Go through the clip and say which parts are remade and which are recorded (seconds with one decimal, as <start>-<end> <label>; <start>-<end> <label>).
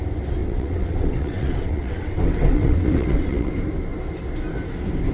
0.0-0.4 recorded; 0.4-3.5 remade; 3.5-5.1 recorded